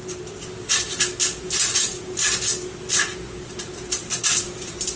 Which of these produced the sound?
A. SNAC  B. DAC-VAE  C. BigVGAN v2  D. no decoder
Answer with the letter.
D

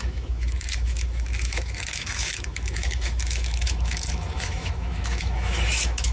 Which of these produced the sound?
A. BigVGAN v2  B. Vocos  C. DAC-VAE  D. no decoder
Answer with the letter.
C